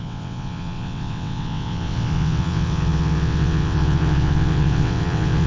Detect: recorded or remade remade